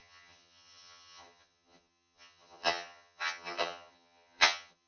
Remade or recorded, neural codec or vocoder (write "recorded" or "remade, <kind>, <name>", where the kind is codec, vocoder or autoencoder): remade, vocoder, HiFi-GAN